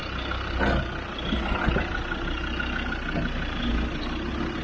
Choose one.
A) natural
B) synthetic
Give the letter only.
A